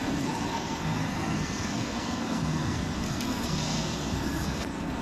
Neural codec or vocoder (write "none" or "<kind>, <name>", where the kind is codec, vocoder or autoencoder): codec, SNAC